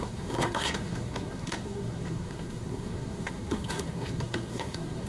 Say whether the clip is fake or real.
fake